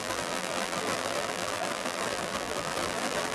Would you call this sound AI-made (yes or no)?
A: yes